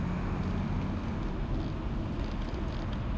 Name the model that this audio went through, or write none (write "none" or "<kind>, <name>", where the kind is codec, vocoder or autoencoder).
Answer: none